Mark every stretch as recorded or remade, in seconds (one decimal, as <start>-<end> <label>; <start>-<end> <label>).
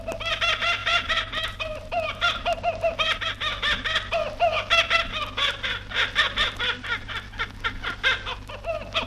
0.0-0.8 recorded; 0.8-3.3 remade; 3.3-9.1 recorded